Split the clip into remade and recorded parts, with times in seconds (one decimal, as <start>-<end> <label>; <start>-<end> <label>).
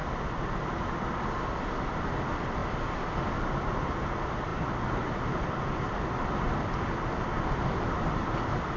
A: 0.0-8.8 recorded